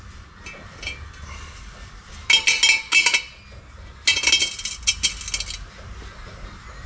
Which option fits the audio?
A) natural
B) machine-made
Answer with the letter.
A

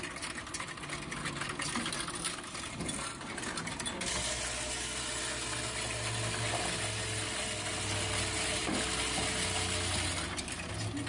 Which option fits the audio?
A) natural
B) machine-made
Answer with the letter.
A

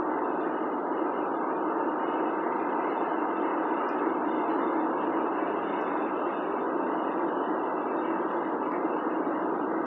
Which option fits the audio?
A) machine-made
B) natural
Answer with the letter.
B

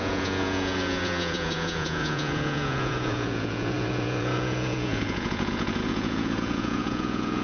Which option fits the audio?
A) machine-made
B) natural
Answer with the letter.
A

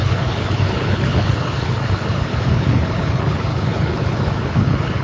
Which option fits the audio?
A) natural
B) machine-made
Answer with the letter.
B